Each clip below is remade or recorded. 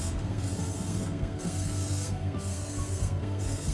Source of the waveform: remade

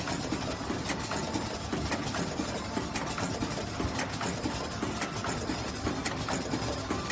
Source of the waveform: recorded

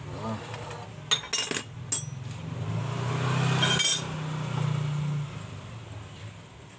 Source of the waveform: recorded